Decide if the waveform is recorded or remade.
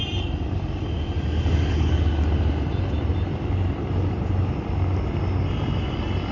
recorded